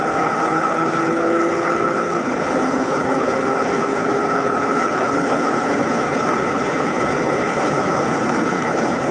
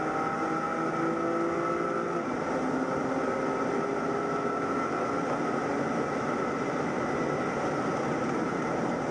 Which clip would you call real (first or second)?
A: second